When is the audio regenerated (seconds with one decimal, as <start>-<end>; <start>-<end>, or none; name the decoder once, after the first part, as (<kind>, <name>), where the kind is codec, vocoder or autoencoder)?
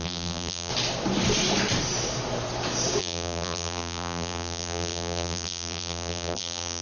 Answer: 0.0-0.7 (vocoder, BigVGAN v2); 3.0-6.8